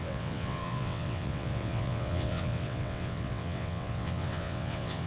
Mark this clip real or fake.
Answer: fake